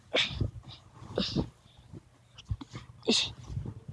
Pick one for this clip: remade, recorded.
recorded